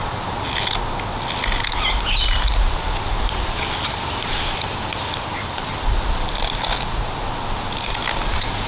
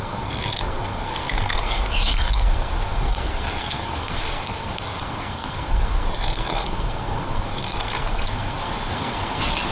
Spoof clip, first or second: second